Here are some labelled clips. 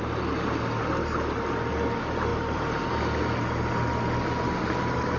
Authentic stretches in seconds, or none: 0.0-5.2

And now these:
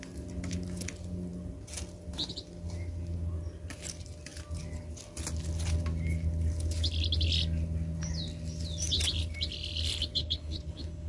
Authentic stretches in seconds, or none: 0.0-10.2

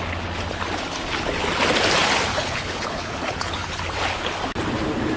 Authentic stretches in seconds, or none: 0.0-2.3; 3.8-5.2

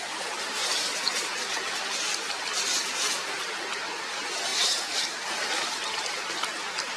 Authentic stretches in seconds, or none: 0.0-7.0